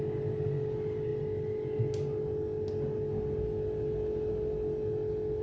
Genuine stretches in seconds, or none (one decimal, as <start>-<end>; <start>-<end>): 0.0-5.4